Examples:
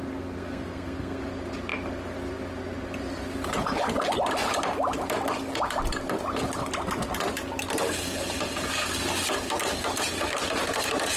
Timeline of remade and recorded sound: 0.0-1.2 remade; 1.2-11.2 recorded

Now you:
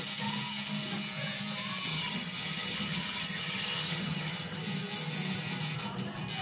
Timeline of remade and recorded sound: 0.0-1.9 recorded; 1.9-4.6 remade; 4.6-6.4 recorded

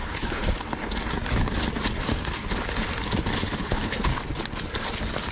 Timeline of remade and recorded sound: 0.0-0.4 remade; 0.4-3.6 recorded; 3.6-4.1 remade; 4.1-5.3 recorded

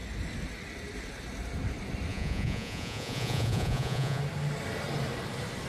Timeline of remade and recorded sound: 0.0-2.1 recorded; 2.1-4.2 remade; 4.2-5.7 recorded

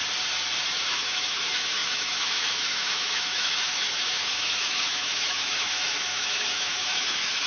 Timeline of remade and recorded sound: 0.0-0.8 recorded; 0.8-7.5 remade